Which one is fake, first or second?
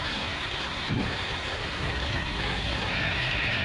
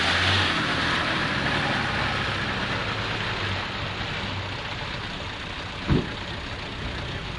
first